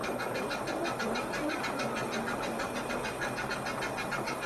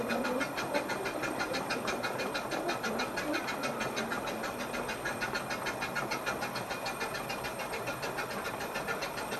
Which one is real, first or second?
first